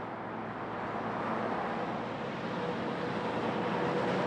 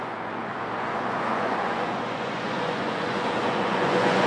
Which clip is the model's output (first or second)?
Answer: second